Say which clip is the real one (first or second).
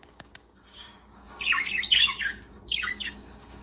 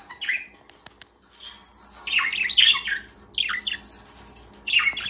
second